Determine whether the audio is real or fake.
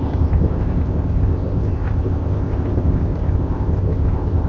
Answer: fake